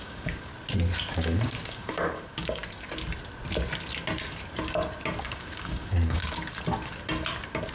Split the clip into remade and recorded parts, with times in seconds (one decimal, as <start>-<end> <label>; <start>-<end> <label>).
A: 0.0-0.5 remade; 0.5-1.1 recorded; 1.1-2.6 remade; 2.6-5.2 recorded; 5.2-6.2 remade; 6.2-7.7 recorded